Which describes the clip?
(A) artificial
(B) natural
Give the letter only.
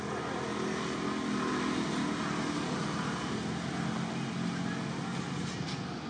B